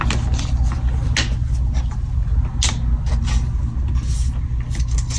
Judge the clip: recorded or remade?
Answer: recorded